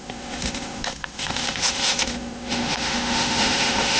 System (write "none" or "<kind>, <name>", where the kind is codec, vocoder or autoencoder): autoencoder, DAC-VAE